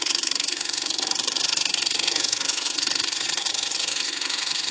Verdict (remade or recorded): remade